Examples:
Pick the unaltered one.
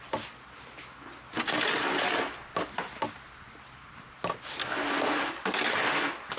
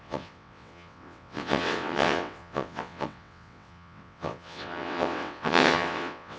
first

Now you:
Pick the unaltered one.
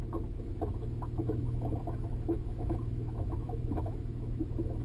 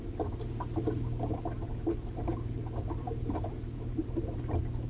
second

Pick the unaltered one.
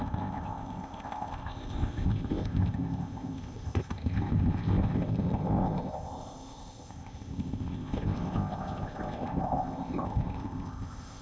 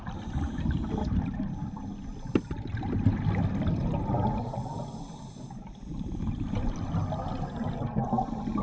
second